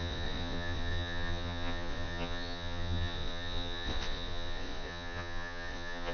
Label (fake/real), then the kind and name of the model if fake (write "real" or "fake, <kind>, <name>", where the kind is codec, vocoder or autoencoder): fake, vocoder, Vocos